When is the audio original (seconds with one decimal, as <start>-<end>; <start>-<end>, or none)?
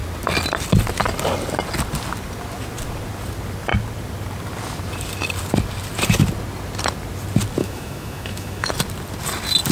0.0-7.6; 8.7-9.7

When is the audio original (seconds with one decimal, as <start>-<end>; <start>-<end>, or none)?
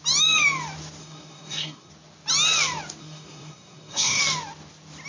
0.0-1.0; 1.9-3.0; 4.2-5.1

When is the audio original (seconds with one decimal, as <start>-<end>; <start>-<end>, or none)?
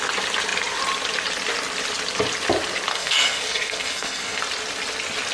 0.0-2.9; 4.4-5.3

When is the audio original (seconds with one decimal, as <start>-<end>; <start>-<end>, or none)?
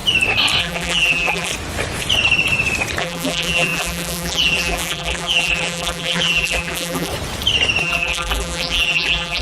0.0-0.6; 1.5-3.0; 7.1-7.8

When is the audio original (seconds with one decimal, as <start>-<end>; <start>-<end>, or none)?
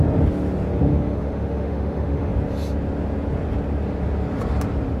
0.0-0.9; 2.3-5.0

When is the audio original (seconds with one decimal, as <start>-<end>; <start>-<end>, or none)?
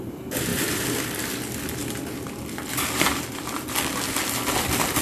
0.0-0.5; 1.3-1.8; 3.5-5.0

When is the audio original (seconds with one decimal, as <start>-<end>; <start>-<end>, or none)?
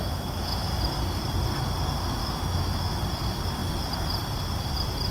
0.7-2.2; 3.0-5.1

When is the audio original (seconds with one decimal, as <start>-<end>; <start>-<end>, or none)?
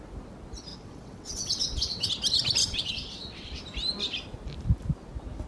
0.0-0.7; 2.1-2.6; 3.6-5.5